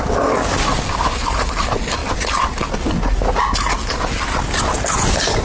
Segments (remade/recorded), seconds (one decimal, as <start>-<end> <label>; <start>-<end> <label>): 0.0-5.4 recorded